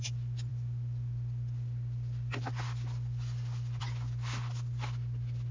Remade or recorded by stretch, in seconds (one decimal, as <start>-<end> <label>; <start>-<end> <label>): 0.0-5.5 recorded